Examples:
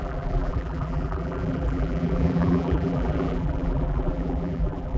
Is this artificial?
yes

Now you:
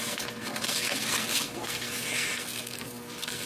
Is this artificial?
yes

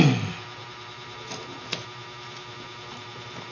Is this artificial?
no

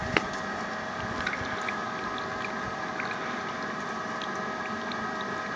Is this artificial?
no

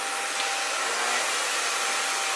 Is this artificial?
no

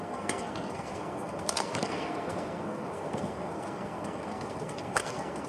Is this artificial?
yes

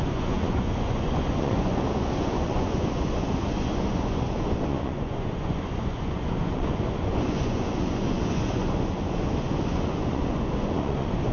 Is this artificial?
yes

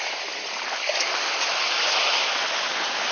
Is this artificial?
no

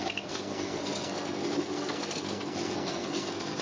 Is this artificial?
yes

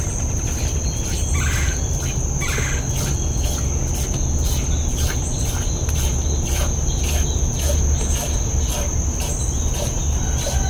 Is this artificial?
no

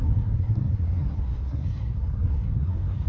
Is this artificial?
yes